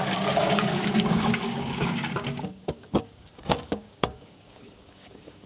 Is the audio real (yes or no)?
no